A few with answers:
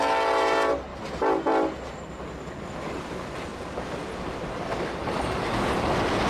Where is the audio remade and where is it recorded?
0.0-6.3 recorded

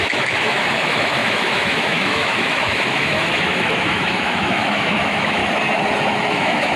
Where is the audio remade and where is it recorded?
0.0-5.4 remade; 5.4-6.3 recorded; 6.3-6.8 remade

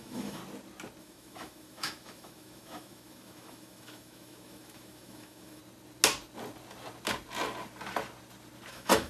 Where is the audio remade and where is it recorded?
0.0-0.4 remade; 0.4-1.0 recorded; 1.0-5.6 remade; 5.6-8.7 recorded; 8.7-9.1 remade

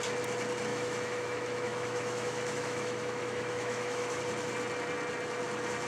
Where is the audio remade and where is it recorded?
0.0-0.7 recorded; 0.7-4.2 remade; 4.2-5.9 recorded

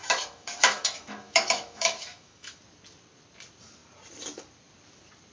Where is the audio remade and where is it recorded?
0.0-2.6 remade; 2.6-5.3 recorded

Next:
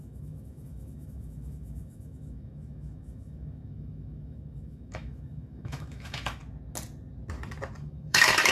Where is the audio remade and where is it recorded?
0.0-6.4 remade; 6.4-7.8 recorded; 7.8-8.5 remade

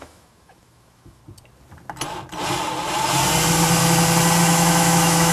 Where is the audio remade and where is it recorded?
0.0-1.2 remade; 1.2-4.4 recorded; 4.4-5.3 remade